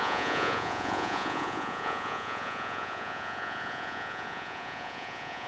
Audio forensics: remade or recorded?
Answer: remade